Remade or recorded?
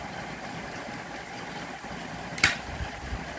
recorded